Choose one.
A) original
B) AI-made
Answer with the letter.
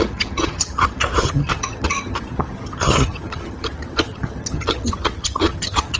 B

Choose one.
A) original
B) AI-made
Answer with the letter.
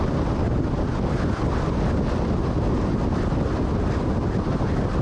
A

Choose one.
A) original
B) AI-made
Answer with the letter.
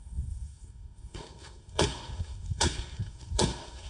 B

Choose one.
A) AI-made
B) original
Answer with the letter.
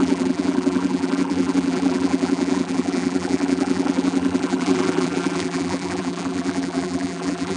A